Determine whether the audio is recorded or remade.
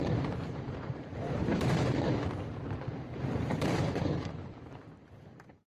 remade